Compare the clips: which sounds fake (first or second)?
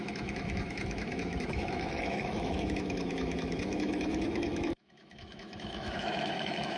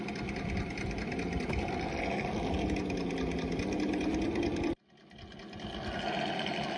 first